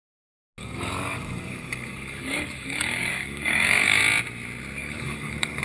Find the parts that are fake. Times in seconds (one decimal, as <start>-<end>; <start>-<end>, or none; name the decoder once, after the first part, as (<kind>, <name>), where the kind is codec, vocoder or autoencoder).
0.6-4.0 (codec, DAC); 4.8-5.6